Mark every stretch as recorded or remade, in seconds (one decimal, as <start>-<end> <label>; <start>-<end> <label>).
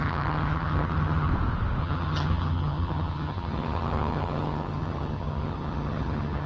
0.0-1.3 remade; 1.3-1.8 recorded; 1.8-6.5 remade